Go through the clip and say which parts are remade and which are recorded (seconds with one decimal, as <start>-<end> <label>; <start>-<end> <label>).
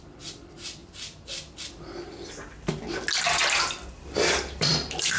0.0-0.8 remade; 0.8-3.9 recorded; 3.9-5.2 remade